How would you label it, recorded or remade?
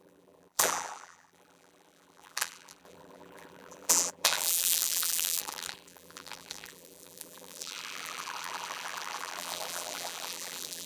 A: remade